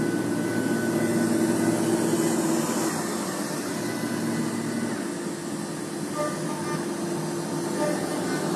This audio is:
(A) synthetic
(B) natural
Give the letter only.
B